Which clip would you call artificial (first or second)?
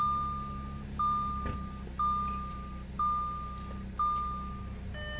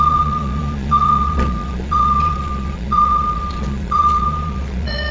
second